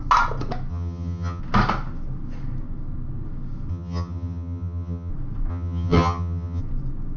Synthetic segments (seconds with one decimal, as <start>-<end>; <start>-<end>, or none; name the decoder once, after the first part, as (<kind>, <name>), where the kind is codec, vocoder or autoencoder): 0.7-1.4 (vocoder, HiFi-GAN); 3.7-5.1; 5.5-6.6